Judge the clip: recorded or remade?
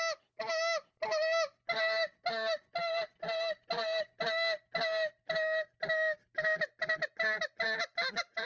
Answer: recorded